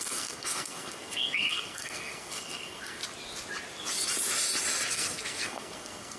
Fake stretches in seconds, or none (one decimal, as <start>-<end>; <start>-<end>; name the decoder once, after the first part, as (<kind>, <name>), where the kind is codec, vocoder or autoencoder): 0.0-3.0 (codec, SNAC); 4.9-6.2